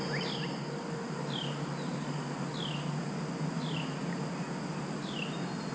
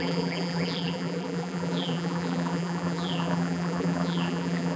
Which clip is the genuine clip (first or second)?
first